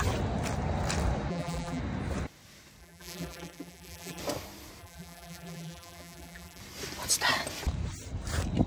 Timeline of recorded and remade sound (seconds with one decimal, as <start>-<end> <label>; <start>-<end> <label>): 0.0-1.3 recorded; 1.3-1.8 remade; 1.8-2.8 recorded; 2.8-4.2 remade; 4.2-4.8 recorded; 4.8-6.6 remade; 6.6-8.7 recorded